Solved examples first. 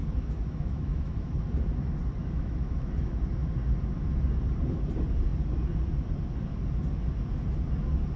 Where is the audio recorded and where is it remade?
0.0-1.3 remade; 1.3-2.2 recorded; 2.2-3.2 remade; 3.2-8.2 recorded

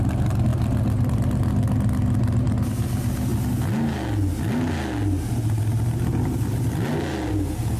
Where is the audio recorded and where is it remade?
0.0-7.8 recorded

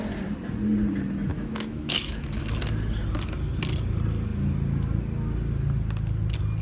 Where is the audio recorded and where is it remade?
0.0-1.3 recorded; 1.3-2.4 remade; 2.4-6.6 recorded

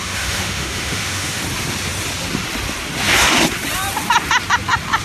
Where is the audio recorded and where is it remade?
0.0-1.4 remade; 1.4-5.0 recorded

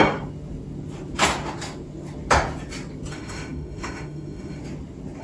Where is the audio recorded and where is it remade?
0.0-3.1 recorded; 3.1-4.6 remade; 4.6-5.2 recorded